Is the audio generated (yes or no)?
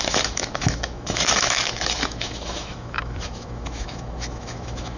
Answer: yes